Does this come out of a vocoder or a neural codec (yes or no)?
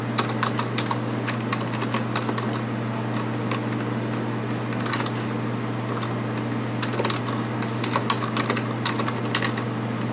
no